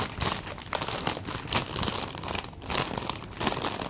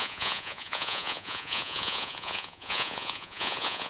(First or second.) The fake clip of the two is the second